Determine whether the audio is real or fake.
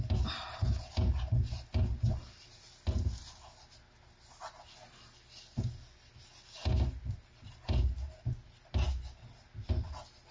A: real